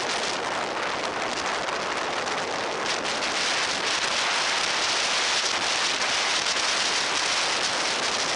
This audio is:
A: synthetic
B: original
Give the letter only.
B